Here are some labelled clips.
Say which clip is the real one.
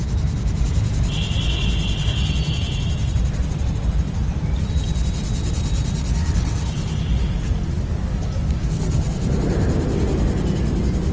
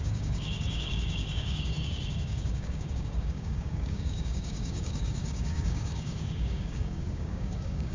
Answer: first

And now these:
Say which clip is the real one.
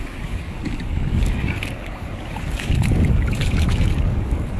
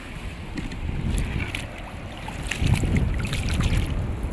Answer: second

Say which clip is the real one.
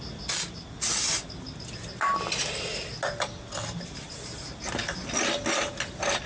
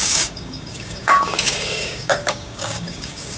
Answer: first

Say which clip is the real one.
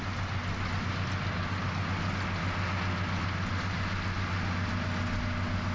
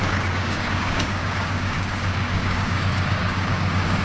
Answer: first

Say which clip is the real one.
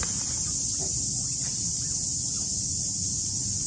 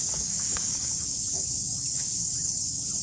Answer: first